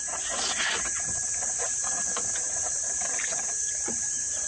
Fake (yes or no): yes